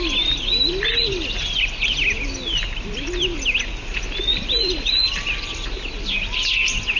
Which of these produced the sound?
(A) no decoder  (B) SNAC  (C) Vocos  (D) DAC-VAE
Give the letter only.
A